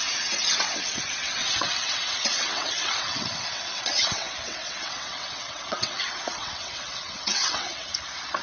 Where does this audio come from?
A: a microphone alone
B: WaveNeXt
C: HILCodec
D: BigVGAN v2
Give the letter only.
B